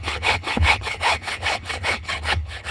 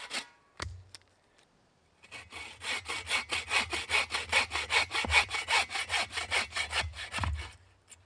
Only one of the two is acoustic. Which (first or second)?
second